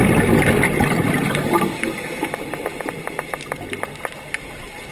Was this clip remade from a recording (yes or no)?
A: no